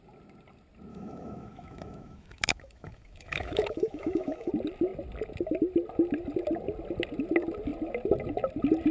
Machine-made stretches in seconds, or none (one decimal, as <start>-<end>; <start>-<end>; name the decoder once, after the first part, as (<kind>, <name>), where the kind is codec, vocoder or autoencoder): 0.9-4.5 (autoencoder, DAC-VAE)

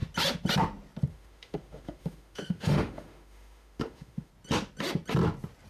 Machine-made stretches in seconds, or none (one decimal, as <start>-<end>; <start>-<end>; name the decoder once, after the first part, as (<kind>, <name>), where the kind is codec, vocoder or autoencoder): 1.1-4.3 (autoencoder, DAC-VAE)

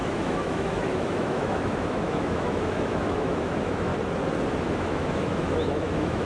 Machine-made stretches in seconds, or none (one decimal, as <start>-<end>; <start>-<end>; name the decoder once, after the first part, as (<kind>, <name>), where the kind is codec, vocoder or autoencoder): 0.0-3.9 (autoencoder, DAC-VAE); 4.7-6.2

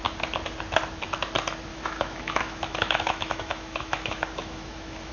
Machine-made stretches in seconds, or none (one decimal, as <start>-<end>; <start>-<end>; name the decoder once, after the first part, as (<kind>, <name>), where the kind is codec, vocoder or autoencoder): 1.7-5.1 (autoencoder, DAC-VAE)

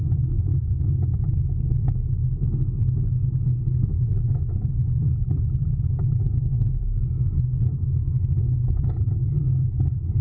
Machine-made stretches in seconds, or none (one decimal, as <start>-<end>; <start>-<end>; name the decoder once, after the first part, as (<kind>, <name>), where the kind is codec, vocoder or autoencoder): 6.2-6.8 (autoencoder, DAC-VAE)